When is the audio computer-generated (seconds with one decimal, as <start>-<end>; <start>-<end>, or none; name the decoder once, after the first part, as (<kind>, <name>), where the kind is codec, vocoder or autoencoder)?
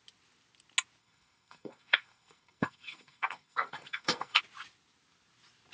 1.0-4.4 (codec, SNAC)